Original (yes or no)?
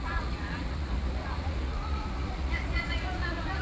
no